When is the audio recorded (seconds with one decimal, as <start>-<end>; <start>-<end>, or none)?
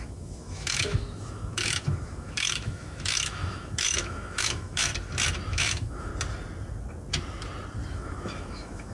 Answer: 4.9-5.5; 6.1-7.9